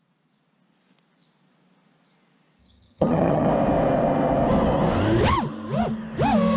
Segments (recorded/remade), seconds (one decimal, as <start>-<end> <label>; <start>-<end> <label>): 0.0-2.6 recorded; 2.6-3.5 remade; 3.5-6.6 recorded